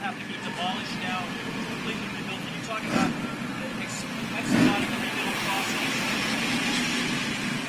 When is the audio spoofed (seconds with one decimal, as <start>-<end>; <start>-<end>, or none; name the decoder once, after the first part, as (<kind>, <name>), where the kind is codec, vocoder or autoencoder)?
none

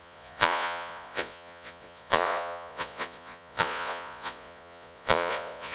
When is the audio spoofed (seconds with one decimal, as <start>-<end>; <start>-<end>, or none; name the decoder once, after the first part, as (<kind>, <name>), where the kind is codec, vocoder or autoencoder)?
0.0-5.7 (vocoder, Vocos)

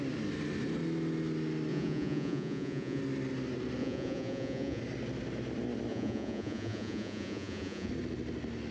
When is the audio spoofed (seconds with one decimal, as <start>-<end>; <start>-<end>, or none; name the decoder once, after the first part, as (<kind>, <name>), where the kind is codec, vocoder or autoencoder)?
1.7-3.0 (vocoder, Vocos); 3.8-4.8; 5.9-7.9

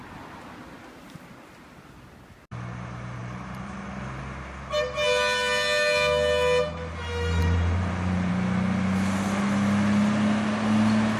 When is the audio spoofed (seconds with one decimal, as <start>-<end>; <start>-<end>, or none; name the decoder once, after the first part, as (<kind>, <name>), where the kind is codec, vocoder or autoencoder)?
3.2-4.2 (vocoder, BigVGAN v2); 7.4-8.3

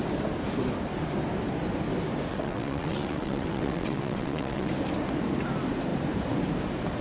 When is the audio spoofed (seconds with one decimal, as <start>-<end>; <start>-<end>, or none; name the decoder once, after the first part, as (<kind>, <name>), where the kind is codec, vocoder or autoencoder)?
2.3-4.7 (vocoder, WaveNeXt)

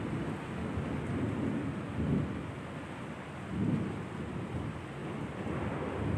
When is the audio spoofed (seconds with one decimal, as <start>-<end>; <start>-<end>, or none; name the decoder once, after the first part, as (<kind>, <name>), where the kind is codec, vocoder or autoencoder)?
none

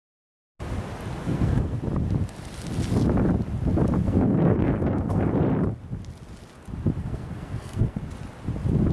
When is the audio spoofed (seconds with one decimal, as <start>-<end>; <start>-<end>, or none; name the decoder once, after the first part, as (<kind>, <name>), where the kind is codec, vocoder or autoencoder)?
1.2-1.8 (codec, SNAC); 4.0-5.2; 7.0-8.0